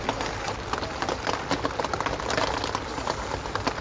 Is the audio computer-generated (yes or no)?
no